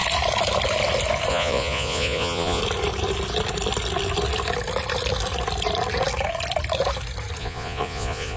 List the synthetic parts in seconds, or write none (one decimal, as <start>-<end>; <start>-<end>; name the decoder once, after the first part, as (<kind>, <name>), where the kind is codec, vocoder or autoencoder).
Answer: 1.3-2.6 (vocoder, Vocos); 7.4-8.4